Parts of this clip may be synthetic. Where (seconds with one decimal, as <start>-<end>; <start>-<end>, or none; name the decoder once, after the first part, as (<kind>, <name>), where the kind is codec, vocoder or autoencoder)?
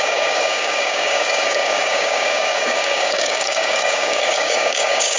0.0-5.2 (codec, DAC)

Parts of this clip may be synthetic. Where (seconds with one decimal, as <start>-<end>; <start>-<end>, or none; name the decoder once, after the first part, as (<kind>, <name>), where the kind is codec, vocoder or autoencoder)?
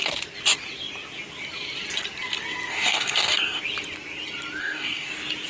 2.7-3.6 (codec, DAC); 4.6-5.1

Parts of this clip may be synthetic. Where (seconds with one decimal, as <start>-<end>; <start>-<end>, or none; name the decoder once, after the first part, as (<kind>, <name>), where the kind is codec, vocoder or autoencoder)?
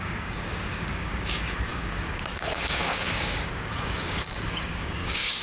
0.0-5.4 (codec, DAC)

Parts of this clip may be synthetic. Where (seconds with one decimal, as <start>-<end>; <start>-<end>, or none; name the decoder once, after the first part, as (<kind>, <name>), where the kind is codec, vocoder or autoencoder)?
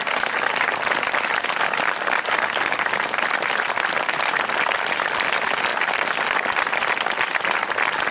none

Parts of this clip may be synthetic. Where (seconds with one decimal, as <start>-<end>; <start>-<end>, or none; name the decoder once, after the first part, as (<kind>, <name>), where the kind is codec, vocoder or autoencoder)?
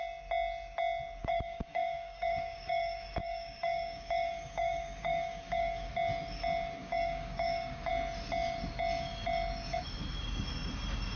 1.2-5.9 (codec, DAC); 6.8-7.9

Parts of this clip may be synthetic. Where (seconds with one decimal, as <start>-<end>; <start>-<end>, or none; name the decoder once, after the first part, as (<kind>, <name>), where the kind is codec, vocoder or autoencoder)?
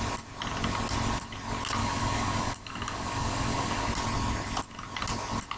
1.8-3.9 (codec, DAC)